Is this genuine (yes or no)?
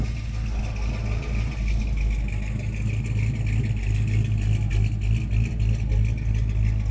yes